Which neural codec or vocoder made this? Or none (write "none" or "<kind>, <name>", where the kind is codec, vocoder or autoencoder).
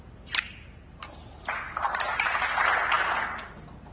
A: none